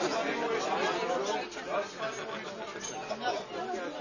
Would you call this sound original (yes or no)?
yes